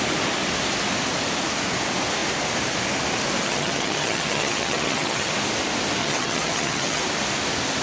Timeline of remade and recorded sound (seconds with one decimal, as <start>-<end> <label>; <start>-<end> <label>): 0.0-3.4 recorded; 3.4-5.3 remade; 5.3-6.0 recorded; 6.0-7.0 remade; 7.0-7.8 recorded